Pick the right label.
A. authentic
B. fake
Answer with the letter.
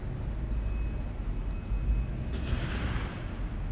A